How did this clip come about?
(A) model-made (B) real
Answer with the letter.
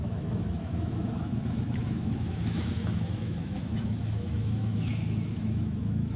A